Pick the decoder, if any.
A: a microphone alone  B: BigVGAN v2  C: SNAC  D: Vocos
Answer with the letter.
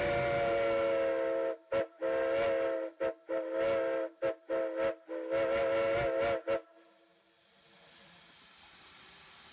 A